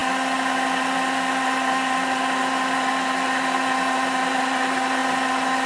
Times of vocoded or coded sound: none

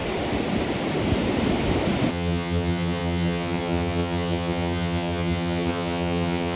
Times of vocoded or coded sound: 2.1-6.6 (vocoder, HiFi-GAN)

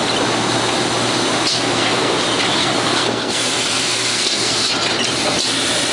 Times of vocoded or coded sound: 1.5-2.1 (codec, SNAC); 2.6-4.7

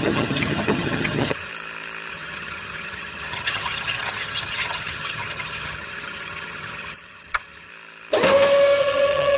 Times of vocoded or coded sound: 0.0-1.5 (vocoder, HiFi-GAN); 2.1-7.7; 8.8-9.4

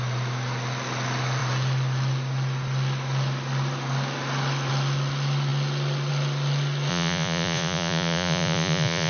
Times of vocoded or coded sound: 6.9-9.1 (vocoder, Vocos)